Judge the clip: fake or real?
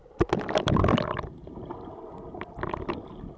real